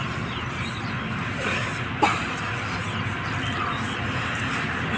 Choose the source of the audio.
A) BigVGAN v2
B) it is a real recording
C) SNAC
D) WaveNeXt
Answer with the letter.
B